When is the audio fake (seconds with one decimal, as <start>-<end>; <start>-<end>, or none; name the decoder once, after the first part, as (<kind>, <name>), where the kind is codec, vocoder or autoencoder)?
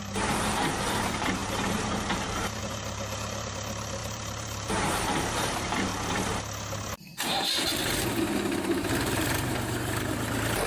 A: 0.0-5.9 (vocoder, BigVGAN v2); 7.0-10.7